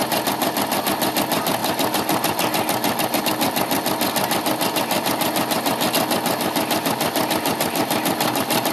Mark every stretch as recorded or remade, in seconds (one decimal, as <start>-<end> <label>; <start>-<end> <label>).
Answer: 0.0-8.7 recorded